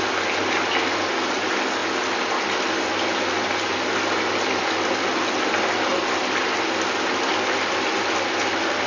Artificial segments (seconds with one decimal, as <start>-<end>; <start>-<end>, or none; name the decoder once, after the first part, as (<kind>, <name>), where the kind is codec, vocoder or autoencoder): 5.9-7.3 (vocoder, BigVGAN v2)